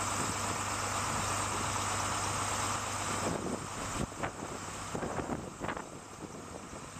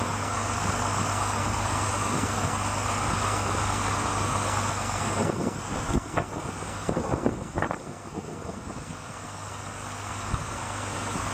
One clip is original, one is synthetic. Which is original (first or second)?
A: first